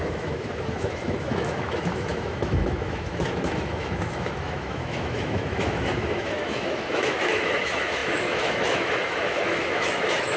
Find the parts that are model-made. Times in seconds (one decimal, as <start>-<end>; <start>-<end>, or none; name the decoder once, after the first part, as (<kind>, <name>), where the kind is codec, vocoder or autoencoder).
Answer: 0.0-10.4 (autoencoder, DAC-VAE)